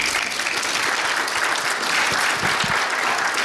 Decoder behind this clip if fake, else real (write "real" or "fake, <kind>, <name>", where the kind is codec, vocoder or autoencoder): real